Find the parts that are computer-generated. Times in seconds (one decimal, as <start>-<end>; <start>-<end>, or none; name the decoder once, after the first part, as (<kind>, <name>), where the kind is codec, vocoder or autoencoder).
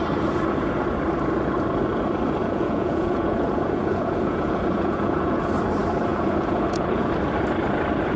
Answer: 2.4-5.5 (vocoder, Vocos); 6.1-7.1